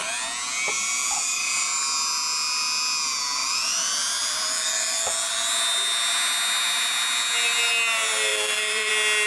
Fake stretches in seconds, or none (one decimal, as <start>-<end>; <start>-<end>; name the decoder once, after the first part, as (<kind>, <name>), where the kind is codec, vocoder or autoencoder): 1.0-1.8 (vocoder, BigVGAN v2); 3.4-5.3; 8.3-8.9